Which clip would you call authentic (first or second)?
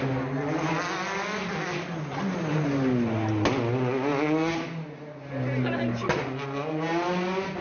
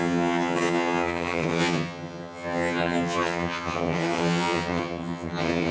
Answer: first